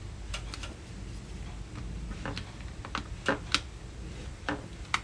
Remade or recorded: recorded